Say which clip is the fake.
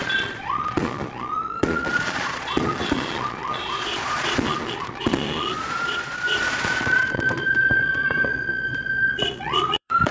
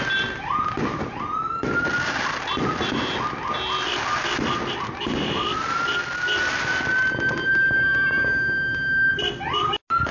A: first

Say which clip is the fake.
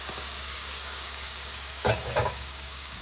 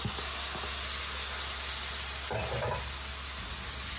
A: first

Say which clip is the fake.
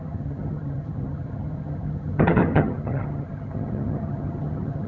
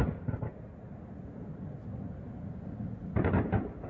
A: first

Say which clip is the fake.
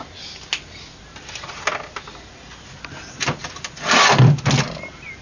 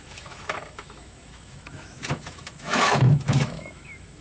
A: second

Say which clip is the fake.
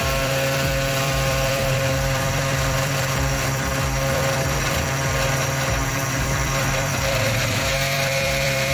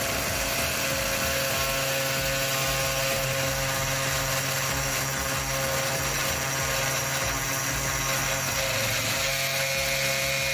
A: first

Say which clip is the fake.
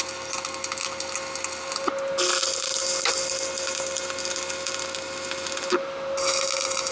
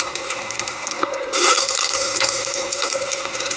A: second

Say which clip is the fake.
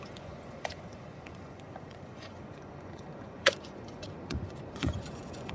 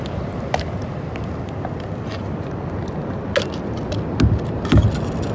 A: first